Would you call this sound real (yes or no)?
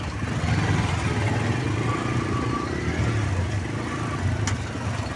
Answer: yes